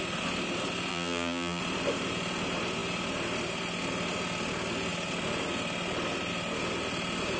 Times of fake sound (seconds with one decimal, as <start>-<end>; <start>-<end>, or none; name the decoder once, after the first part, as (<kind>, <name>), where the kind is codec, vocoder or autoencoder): 0.9-1.6 (vocoder, BigVGAN v2)